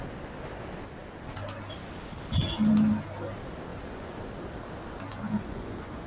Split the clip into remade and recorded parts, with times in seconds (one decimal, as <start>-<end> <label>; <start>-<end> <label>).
0.0-3.7 recorded; 3.7-4.3 remade; 4.3-5.1 recorded; 5.1-6.1 remade